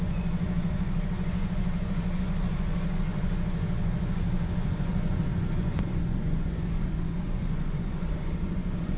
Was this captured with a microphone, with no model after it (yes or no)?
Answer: no